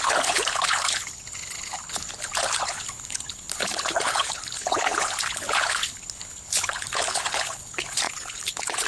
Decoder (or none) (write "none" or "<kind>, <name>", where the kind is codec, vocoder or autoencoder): codec, HILCodec